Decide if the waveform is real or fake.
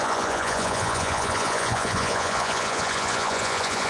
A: fake